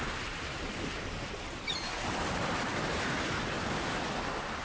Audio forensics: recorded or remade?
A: recorded